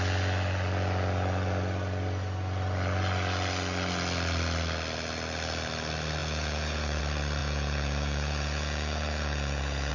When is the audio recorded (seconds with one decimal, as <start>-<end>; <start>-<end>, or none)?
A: 0.0-6.2; 7.0-7.4